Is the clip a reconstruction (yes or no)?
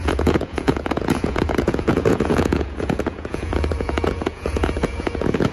yes